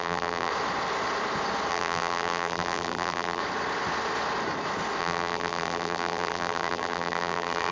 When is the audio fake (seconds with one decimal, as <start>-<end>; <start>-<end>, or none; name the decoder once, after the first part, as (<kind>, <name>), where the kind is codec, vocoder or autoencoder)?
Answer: 0.0-0.5 (vocoder, BigVGAN v2); 1.7-3.4; 5.0-7.7